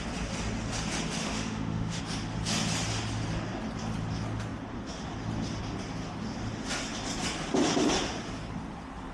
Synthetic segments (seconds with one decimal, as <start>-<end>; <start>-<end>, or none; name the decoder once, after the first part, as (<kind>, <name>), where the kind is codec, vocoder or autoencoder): 1.2-2.0 (autoencoder, DAC-VAE)